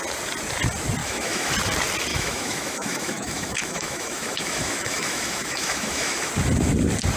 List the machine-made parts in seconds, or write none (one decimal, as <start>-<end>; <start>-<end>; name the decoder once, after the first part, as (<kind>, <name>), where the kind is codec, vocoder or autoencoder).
1.0-1.5 (autoencoder, DAC-VAE); 2.1-6.3